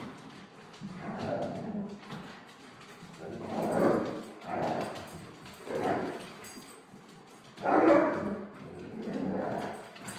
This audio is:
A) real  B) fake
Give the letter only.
A